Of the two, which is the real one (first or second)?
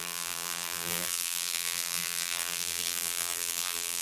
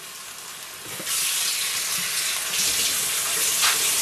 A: second